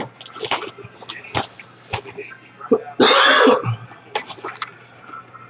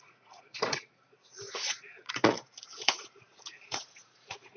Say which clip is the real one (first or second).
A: first